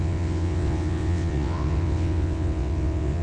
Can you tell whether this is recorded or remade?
remade